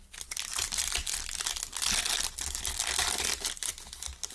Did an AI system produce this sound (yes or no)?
no